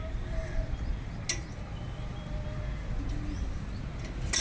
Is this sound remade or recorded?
recorded